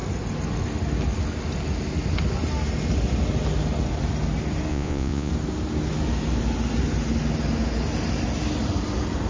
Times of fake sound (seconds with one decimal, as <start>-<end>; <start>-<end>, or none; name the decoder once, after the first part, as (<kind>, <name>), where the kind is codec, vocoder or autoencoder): 4.7-5.3 (vocoder, Vocos)